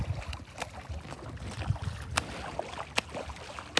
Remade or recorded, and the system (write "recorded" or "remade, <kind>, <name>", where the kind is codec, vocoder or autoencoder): recorded